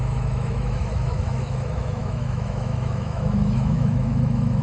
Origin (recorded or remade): remade